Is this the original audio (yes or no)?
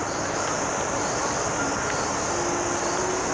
yes